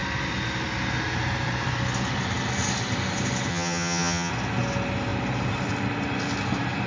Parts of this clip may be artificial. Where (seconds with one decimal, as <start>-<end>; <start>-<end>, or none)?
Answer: 3.5-4.3